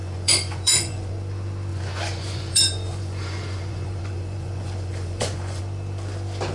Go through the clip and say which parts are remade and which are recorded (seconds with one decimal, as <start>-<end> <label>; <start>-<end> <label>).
0.0-1.1 remade; 1.1-1.7 recorded; 1.7-5.6 remade; 5.6-6.5 recorded